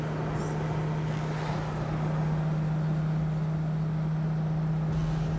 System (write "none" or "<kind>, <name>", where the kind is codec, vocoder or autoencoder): none